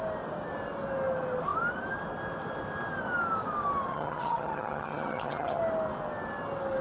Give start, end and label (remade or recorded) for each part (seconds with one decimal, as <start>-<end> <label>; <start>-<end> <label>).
0.0-3.9 recorded; 3.9-5.6 remade; 5.6-6.8 recorded

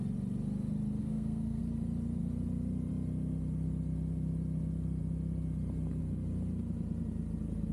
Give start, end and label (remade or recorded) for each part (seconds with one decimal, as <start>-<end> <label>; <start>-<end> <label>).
0.0-1.0 recorded; 1.0-1.6 remade; 1.6-7.7 recorded

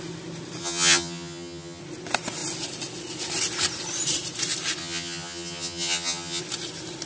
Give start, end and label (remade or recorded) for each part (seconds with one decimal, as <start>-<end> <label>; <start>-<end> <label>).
0.0-0.6 recorded; 0.6-1.8 remade; 1.8-4.8 recorded; 4.8-6.4 remade; 6.4-7.1 recorded